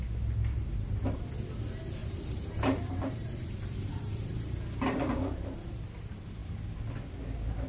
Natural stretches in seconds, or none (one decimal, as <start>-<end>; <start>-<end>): 0.0-2.0; 4.6-7.7